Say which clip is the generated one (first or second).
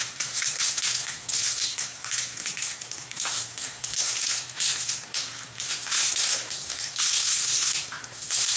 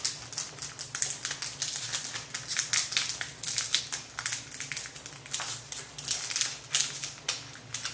first